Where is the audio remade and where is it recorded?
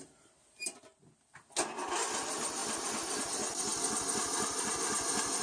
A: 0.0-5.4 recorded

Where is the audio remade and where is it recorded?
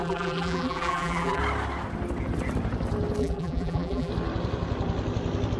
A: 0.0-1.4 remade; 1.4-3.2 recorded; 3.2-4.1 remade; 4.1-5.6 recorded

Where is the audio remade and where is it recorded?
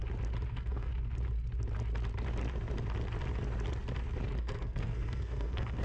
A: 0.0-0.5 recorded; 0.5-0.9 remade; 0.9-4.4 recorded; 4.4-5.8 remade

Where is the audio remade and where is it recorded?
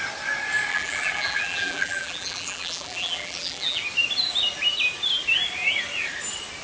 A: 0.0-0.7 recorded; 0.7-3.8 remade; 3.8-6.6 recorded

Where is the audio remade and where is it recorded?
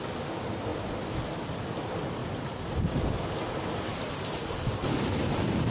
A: 0.0-2.2 recorded; 2.2-3.0 remade; 3.0-3.9 recorded; 3.9-5.7 remade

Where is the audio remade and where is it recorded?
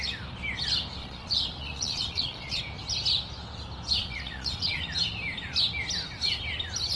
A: 0.0-1.0 recorded; 1.0-2.6 remade; 2.6-4.0 recorded; 4.0-4.8 remade; 4.8-7.0 recorded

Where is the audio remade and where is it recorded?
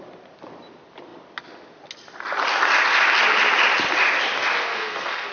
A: 0.0-4.6 recorded; 4.6-5.3 remade